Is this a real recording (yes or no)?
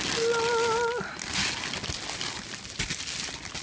yes